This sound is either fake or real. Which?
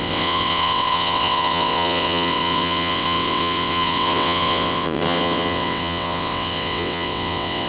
fake